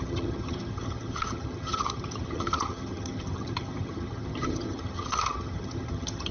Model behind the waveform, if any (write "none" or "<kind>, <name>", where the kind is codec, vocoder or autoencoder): vocoder, HiFi-GAN